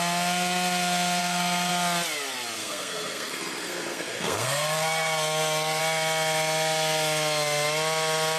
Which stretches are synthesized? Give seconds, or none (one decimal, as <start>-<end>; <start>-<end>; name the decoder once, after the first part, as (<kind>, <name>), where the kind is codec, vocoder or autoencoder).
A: 1.2-1.7 (codec, SNAC); 2.6-5.8